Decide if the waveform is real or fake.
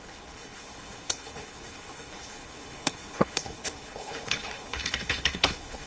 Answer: fake